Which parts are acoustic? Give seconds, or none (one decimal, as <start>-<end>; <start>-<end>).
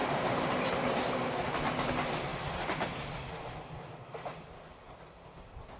0.0-5.8